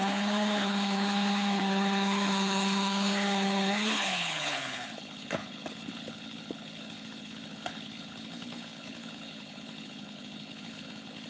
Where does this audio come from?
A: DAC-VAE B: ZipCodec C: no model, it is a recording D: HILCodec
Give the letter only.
D